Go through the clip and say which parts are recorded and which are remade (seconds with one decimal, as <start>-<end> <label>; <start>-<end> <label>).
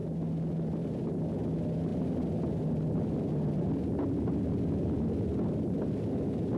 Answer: 0.0-6.6 recorded